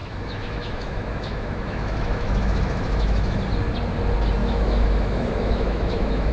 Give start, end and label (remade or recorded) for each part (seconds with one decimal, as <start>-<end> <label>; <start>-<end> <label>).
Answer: 0.0-3.4 remade; 3.4-4.4 recorded; 4.4-6.3 remade